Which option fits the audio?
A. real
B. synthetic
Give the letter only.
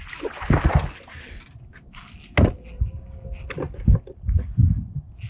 A